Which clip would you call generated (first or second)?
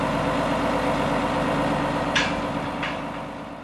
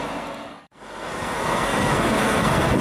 second